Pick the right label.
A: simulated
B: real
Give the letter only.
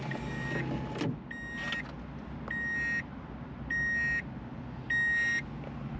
B